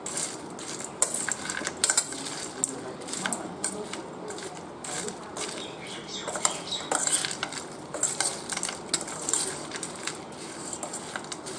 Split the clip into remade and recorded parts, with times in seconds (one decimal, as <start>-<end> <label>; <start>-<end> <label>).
0.0-11.6 recorded